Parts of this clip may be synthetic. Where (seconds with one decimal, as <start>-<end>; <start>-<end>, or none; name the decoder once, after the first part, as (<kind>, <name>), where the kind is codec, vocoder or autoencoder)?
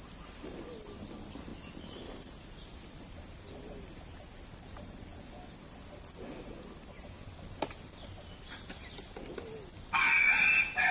none